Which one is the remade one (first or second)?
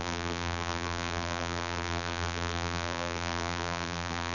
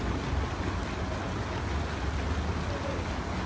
first